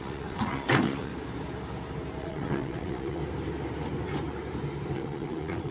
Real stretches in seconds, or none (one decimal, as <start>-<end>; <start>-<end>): 1.1-2.2; 3.2-4.9